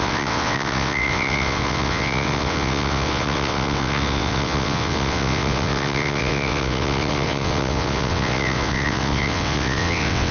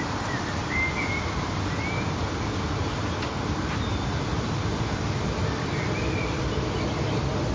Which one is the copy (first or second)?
first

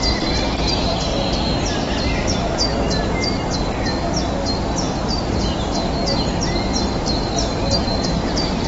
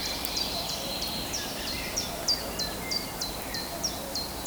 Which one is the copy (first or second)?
second